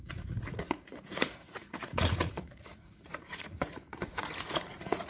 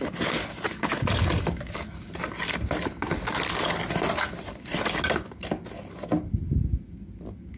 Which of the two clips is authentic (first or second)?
second